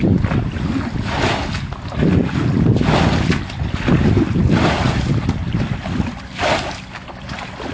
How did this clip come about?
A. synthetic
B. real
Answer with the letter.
B